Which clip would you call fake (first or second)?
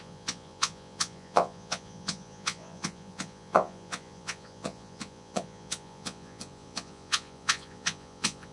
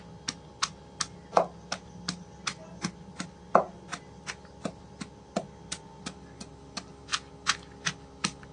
first